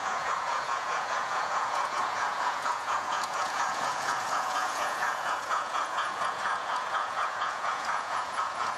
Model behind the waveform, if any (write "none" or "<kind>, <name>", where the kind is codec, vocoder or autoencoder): vocoder, Vocos